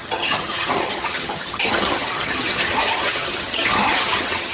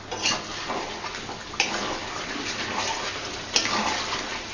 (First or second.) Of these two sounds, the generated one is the first